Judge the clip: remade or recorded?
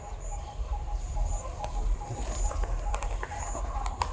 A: remade